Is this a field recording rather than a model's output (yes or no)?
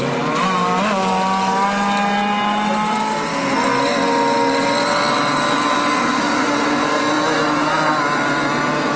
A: yes